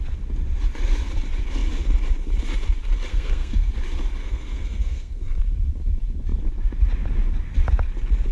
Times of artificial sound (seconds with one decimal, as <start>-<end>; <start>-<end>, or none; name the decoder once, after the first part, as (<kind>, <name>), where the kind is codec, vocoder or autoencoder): 3.1-3.7 (codec, SNAC); 4.2-5.4